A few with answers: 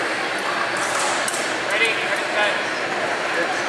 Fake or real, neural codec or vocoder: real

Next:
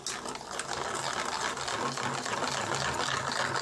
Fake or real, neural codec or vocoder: real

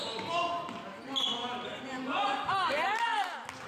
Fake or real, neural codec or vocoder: real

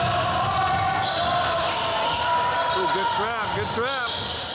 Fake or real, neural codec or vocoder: real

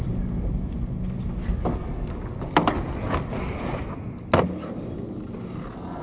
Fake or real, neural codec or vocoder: real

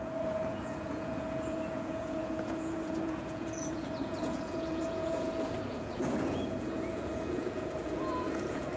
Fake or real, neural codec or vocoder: fake, vocoder, Vocos